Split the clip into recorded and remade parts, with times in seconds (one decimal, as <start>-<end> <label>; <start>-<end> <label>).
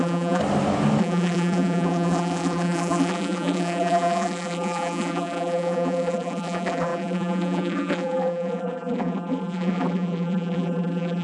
0.0-0.4 remade; 0.4-1.0 recorded; 1.0-11.2 remade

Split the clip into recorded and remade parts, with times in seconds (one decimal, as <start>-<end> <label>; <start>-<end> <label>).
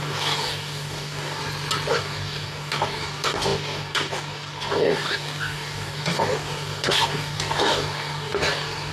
0.0-1.4 remade; 1.4-1.9 recorded; 1.9-8.9 remade